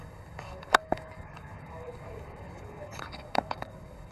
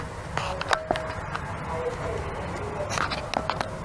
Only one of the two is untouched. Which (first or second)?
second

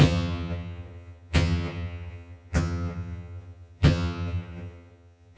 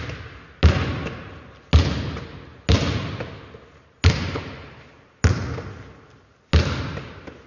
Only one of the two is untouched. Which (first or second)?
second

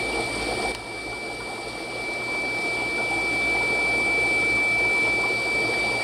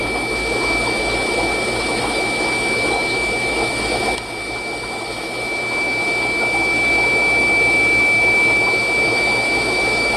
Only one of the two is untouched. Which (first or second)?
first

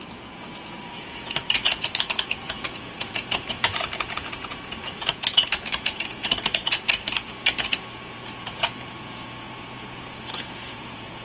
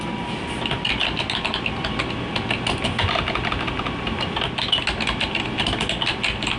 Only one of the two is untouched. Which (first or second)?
second